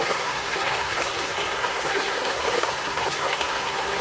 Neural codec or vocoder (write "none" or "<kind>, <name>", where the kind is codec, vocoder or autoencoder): codec, SNAC